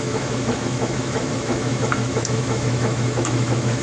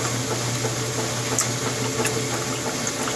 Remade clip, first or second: first